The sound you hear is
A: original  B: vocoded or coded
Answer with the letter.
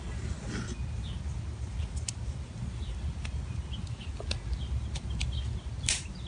A